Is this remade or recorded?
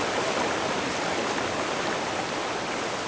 recorded